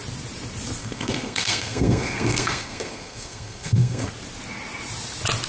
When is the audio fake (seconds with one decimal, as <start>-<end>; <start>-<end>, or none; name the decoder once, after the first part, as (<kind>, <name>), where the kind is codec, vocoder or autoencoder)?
0.8-4.1 (codec, SNAC)